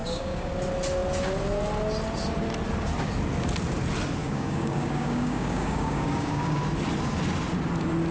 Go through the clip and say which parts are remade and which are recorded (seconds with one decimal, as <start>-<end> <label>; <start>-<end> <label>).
0.0-0.5 remade; 0.5-4.2 recorded; 4.2-6.6 remade; 6.6-8.1 recorded